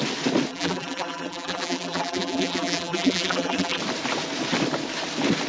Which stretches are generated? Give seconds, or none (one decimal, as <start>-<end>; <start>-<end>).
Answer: 0.5-3.8